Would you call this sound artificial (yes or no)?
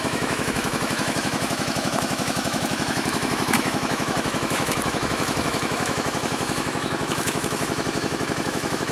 yes